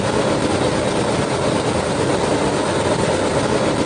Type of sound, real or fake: real